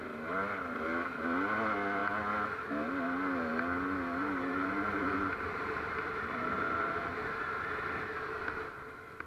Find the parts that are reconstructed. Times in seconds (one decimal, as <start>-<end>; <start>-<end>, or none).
4.2-7.8